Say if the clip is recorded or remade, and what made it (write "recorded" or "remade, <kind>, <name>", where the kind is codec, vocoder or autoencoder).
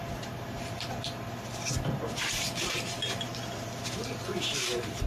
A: remade, vocoder, BigVGAN v2